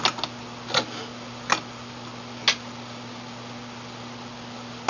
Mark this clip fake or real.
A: real